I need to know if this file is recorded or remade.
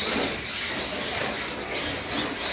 recorded